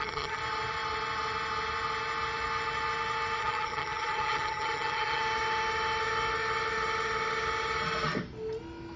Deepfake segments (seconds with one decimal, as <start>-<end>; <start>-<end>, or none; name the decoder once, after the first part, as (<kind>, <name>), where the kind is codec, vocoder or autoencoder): 0.0-0.4 (vocoder, HiFi-GAN); 3.4-5.2